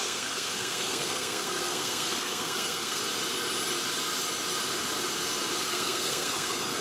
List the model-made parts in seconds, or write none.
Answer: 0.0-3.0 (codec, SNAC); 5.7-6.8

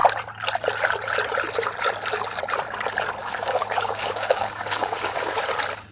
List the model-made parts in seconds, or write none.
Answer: 3.2-5.4 (codec, DAC)

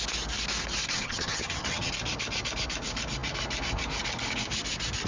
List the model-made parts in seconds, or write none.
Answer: 0.8-1.9 (vocoder, HiFi-GAN)

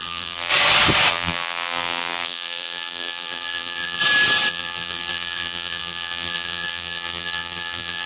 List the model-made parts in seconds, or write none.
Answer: 0.0-0.5 (vocoder, BigVGAN v2); 1.1-4.0; 4.5-8.1